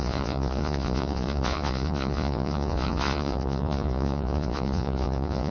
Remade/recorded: remade